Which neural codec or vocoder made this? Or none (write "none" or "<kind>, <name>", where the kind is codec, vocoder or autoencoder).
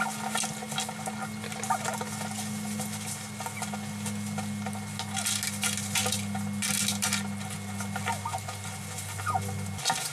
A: none